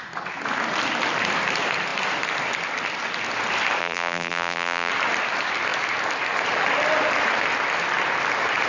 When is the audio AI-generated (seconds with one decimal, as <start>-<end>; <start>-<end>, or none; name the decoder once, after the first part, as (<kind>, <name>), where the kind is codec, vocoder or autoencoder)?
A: 3.8-4.9 (vocoder, BigVGAN v2)